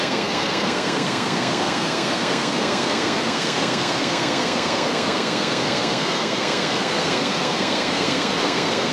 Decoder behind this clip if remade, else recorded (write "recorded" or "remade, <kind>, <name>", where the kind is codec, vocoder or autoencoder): remade, codec, SNAC